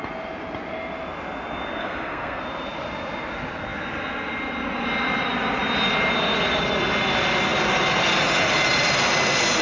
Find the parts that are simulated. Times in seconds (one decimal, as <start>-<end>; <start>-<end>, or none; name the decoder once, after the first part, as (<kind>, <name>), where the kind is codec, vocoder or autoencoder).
1.8-2.4 (codec, SNAC)